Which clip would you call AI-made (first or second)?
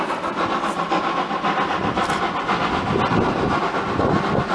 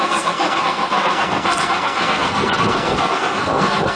second